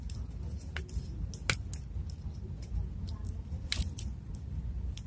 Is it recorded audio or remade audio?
recorded